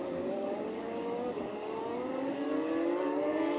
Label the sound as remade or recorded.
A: remade